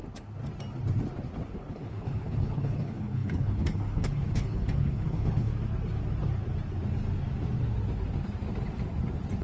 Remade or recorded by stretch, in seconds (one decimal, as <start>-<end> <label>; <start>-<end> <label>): 0.0-1.7 recorded; 1.7-5.5 remade; 5.5-9.4 recorded